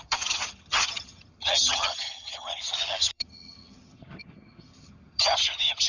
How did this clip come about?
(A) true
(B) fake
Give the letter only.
B